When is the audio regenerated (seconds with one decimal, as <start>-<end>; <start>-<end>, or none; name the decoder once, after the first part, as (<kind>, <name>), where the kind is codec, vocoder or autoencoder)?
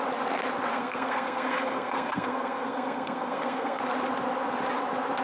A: 0.7-3.8 (codec, SNAC)